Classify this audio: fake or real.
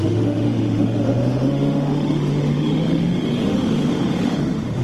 fake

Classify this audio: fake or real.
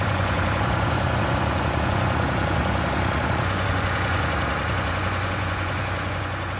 fake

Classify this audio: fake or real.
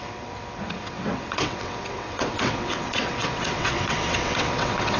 fake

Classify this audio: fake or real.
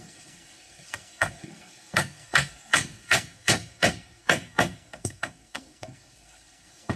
fake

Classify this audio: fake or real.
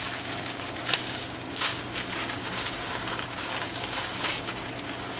fake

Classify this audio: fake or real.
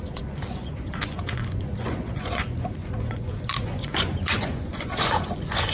fake